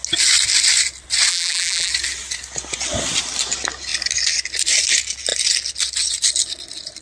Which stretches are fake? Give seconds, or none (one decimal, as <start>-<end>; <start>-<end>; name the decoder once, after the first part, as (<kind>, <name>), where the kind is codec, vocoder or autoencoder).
1.3-1.9 (vocoder, BigVGAN v2)